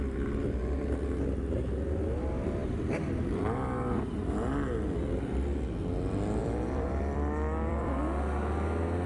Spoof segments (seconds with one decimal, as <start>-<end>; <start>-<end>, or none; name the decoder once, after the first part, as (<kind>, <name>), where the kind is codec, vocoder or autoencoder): 6.4-8.0 (vocoder, BigVGAN v2)